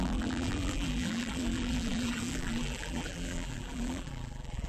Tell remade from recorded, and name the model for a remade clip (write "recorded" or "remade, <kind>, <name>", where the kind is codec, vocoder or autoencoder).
remade, vocoder, BigVGAN v2